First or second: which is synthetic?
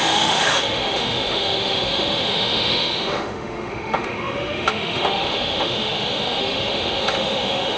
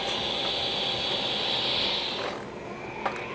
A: first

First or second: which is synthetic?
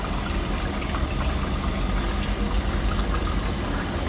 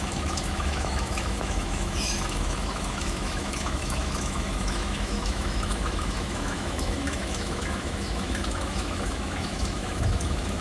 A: second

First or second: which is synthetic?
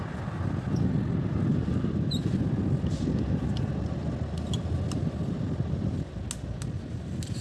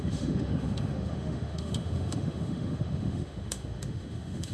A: second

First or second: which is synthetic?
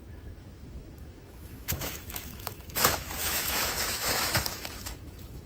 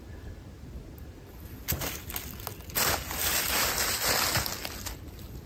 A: first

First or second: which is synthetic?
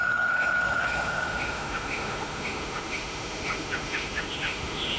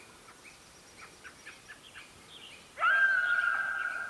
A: first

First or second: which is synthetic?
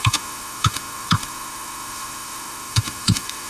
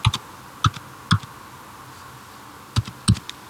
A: first